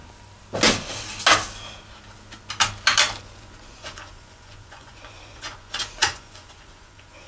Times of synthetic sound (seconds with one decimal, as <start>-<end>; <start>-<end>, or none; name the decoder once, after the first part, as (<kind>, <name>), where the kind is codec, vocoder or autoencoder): 3.2-7.3 (vocoder, Vocos)